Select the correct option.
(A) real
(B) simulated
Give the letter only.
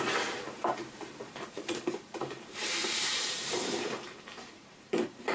B